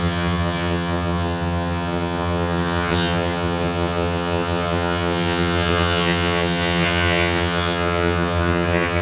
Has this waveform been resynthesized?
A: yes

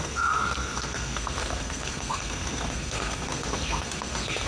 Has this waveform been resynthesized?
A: yes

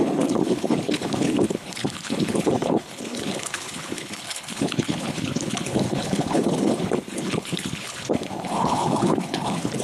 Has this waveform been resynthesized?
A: yes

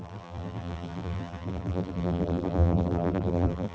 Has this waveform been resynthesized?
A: yes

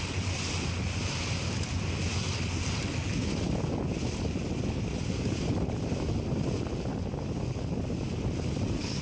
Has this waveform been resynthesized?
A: no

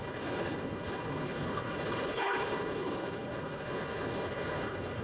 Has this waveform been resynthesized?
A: yes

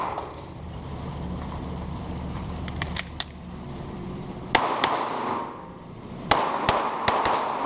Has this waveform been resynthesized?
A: yes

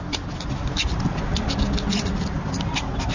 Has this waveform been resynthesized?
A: no